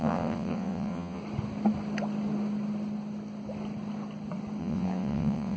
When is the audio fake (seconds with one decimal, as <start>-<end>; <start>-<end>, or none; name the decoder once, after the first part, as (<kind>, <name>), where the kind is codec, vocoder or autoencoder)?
0.0-1.2 (vocoder, WaveNeXt); 4.6-5.6